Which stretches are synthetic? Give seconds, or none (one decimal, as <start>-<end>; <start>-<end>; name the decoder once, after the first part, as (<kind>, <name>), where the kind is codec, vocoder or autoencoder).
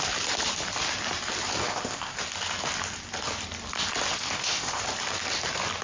1.6-2.2 (codec, ZipCodec); 4.2-4.8